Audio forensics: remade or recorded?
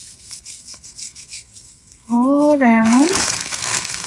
remade